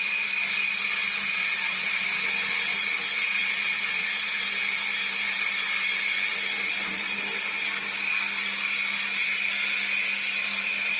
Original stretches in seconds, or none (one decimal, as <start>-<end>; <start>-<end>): 0.0-1.4; 2.0-3.1; 4.4-11.0